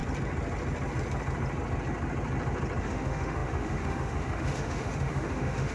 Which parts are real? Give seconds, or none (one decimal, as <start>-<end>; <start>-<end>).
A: 0.0-2.8